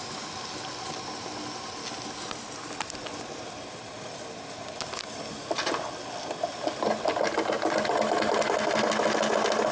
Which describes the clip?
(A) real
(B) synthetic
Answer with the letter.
A